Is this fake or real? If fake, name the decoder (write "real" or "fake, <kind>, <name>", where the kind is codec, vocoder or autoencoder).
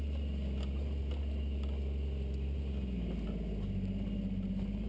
real